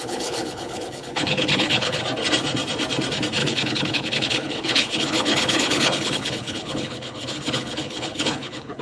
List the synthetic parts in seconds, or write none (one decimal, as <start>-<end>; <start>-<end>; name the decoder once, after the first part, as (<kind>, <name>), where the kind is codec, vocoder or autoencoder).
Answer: 0.0-2.0 (codec, HILCodec); 3.4-8.8